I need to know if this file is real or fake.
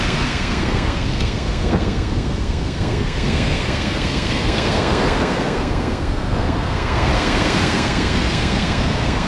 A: fake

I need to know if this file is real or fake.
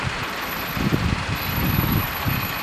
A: real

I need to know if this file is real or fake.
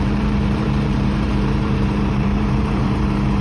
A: fake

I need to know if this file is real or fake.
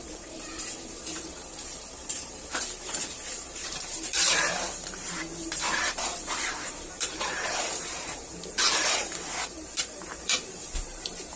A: fake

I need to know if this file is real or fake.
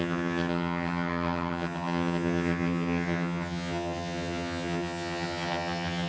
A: fake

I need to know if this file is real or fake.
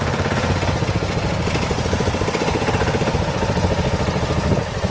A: real